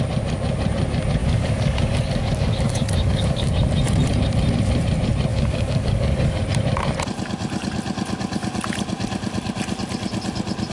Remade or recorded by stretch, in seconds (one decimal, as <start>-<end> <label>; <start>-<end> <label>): 0.0-1.2 recorded; 1.2-3.5 remade; 3.5-5.3 recorded; 5.3-6.4 remade; 6.4-10.7 recorded